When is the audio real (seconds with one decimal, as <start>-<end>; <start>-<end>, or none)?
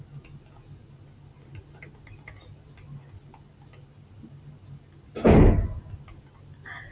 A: 0.0-6.9